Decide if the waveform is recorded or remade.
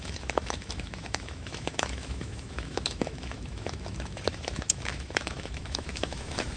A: remade